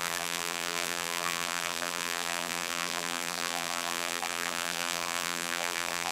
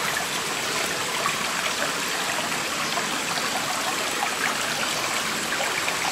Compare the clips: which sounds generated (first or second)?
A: first